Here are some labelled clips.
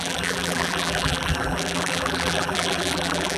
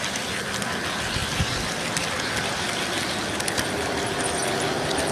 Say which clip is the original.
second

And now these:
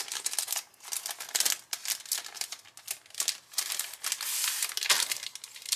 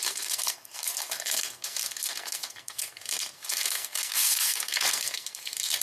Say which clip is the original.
first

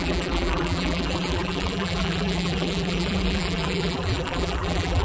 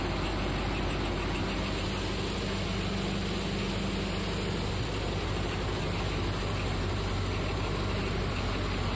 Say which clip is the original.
second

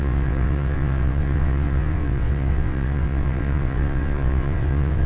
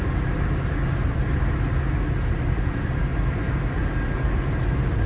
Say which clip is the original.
second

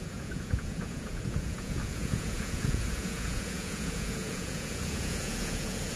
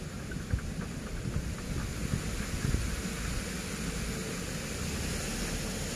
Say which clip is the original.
second